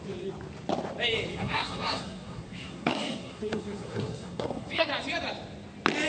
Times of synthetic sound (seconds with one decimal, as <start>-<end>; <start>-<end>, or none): 1.3-4.9